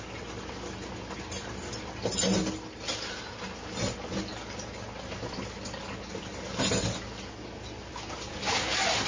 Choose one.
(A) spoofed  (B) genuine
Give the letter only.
B